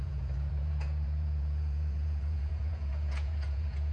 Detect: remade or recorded remade